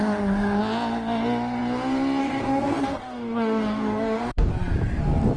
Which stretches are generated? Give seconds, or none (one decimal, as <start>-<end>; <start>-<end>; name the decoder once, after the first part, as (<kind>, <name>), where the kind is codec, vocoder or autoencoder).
2.2-4.5 (codec, DAC)